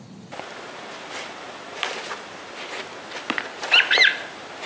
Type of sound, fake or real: real